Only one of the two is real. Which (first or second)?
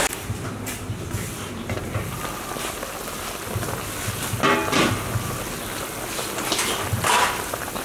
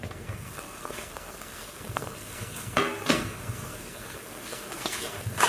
first